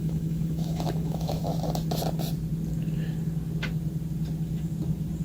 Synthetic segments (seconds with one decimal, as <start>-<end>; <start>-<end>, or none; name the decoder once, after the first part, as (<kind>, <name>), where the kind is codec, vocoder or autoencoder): 0.0-1.4 (autoencoder, DAC-VAE)